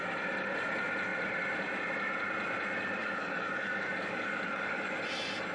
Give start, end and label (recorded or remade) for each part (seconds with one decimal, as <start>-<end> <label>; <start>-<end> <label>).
0.0-3.0 recorded; 3.0-4.9 remade; 4.9-5.5 recorded